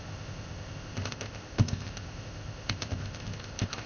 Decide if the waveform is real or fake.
fake